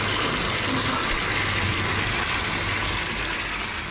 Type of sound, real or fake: real